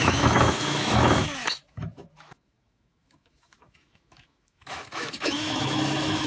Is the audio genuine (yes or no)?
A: no